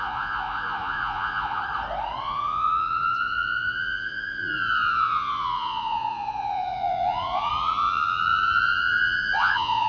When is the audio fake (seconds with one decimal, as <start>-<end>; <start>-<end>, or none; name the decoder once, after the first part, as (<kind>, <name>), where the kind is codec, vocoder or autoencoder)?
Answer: 0.0-1.6 (vocoder, Vocos); 2.2-9.9